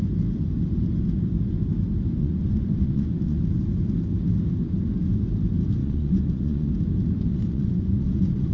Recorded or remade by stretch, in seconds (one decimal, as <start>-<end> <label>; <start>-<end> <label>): 0.0-2.2 recorded; 2.2-3.4 remade; 3.4-5.8 recorded; 5.8-6.7 remade; 6.7-7.3 recorded; 7.3-8.5 remade